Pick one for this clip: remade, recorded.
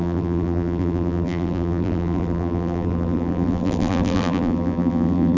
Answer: remade